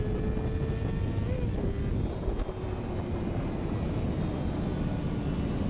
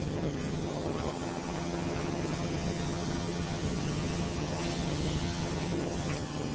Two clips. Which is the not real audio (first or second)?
second